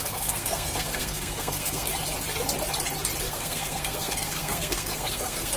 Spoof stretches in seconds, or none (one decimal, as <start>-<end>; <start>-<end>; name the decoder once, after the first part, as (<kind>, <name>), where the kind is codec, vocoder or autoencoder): 0.0-1.9 (codec, SNAC); 3.2-5.6